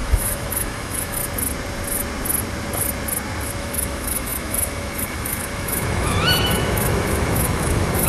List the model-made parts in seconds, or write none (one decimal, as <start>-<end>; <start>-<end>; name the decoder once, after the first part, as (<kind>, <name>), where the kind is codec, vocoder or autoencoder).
0.0-1.2 (autoencoder, DAC-VAE); 3.6-8.1